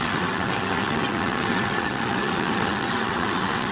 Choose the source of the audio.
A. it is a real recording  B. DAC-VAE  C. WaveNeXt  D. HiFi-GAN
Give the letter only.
C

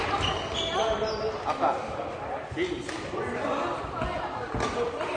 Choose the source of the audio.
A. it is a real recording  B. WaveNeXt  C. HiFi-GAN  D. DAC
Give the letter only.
A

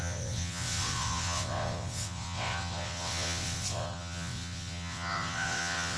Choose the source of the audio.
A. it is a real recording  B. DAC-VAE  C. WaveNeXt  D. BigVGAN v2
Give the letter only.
C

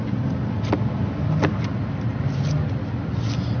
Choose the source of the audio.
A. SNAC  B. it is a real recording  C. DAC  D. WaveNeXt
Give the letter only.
B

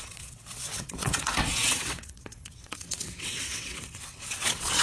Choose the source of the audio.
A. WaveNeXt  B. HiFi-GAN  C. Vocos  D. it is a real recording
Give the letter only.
A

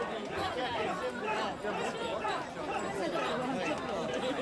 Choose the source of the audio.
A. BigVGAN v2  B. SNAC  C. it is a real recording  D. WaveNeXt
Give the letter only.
C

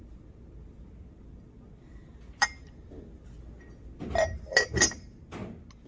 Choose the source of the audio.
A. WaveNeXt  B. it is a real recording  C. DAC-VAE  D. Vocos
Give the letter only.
B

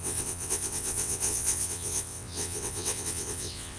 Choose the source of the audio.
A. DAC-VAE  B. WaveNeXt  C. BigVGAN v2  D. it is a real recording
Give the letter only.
B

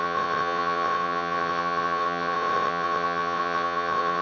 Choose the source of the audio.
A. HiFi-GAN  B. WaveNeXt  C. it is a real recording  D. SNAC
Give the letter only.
B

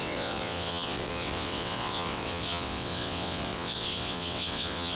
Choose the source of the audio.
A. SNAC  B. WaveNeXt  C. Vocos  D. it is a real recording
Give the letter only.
B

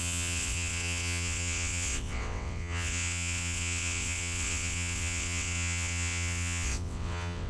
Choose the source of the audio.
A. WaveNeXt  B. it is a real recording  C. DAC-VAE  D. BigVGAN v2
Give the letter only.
A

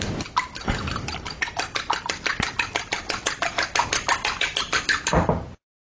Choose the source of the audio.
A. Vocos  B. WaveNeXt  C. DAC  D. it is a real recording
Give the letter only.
D